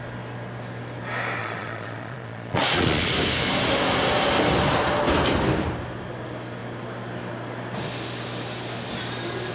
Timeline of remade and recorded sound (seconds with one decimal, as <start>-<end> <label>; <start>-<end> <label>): 0.0-1.4 recorded; 1.4-3.1 remade; 3.1-9.5 recorded